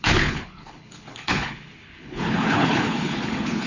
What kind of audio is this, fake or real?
fake